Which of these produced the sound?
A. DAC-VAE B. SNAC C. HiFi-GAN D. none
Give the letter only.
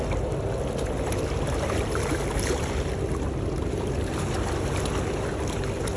D